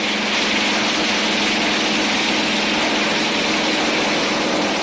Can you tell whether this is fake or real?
real